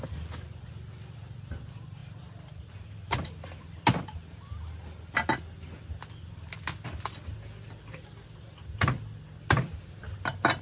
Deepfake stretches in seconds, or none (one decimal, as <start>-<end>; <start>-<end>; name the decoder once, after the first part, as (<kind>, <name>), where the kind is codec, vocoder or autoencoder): none